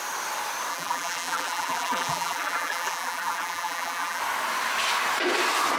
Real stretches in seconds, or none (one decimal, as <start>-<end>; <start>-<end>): 0.0-0.7; 4.2-5.8